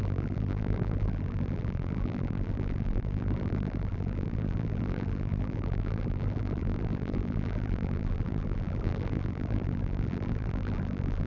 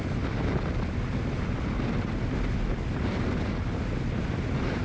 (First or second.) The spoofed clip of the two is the first